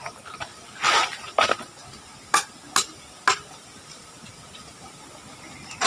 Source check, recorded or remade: recorded